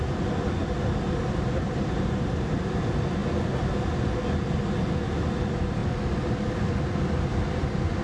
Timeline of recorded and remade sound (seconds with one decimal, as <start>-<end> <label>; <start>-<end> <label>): 0.0-0.6 recorded; 0.6-2.8 remade; 2.8-8.0 recorded

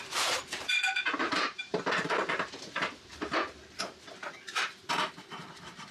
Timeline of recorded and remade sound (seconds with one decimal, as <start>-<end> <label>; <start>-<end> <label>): 0.0-4.7 remade; 4.7-5.3 recorded; 5.3-5.9 remade

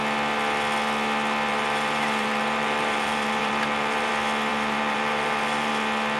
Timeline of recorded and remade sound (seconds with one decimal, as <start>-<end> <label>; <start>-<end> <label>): 0.0-1.5 recorded; 1.5-4.1 remade; 4.1-4.5 recorded; 4.5-5.7 remade; 5.7-6.2 recorded

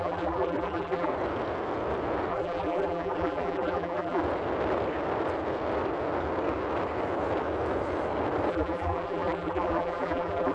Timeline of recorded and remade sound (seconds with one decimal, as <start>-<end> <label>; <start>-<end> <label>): 0.0-1.1 remade; 1.1-2.3 recorded; 2.3-4.2 remade; 4.2-8.5 recorded; 8.5-10.5 remade

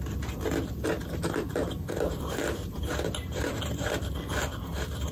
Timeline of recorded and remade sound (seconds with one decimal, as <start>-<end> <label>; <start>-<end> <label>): 0.0-1.0 recorded; 1.0-4.1 remade; 4.1-5.1 recorded

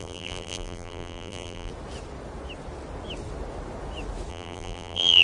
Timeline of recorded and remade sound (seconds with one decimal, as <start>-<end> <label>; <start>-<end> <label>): 0.0-1.7 remade; 1.7-4.3 recorded; 4.3-5.2 remade